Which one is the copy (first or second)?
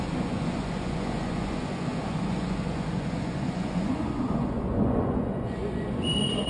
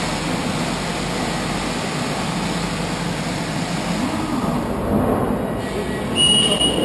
first